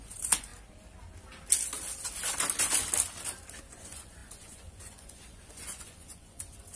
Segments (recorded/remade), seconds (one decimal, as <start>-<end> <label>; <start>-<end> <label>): 0.0-0.5 remade; 0.5-3.6 recorded; 3.6-6.8 remade